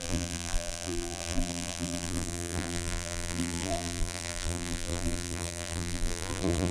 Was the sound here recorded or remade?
remade